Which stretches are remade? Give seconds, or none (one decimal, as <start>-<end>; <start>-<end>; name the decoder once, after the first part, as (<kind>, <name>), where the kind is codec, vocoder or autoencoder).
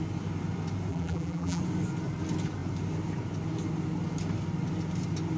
0.9-1.6 (vocoder, BigVGAN v2)